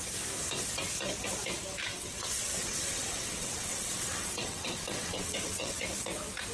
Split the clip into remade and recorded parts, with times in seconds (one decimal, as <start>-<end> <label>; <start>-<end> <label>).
0.0-1.9 recorded; 1.9-5.8 remade; 5.8-6.5 recorded